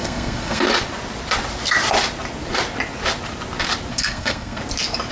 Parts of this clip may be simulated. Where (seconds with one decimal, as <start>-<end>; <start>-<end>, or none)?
0.0-0.6; 3.9-4.6